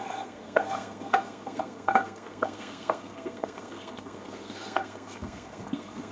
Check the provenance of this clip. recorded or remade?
remade